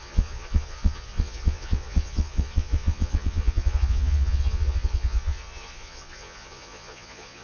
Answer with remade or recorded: remade